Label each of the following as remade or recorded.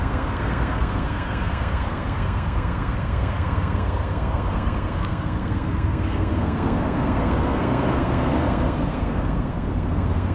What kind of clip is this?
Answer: remade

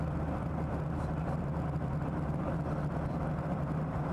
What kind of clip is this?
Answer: remade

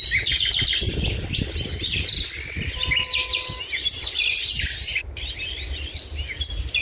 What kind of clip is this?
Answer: recorded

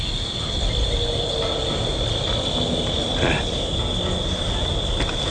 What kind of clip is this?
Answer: recorded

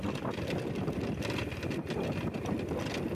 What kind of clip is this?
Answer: recorded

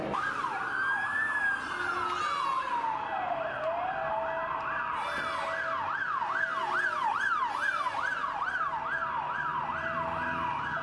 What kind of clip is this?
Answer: recorded